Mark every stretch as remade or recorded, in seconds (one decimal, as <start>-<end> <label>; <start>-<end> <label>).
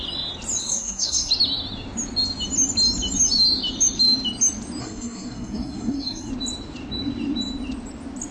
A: 0.0-0.6 recorded; 0.6-1.3 remade; 1.3-4.8 recorded; 4.8-6.3 remade; 6.3-8.3 recorded